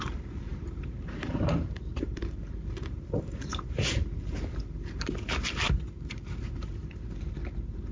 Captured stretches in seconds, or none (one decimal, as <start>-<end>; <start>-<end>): none